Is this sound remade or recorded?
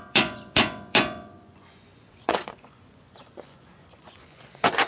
remade